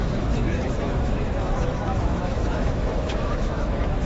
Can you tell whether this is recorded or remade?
remade